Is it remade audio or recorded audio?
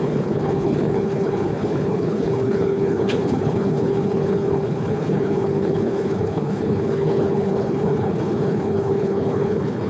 remade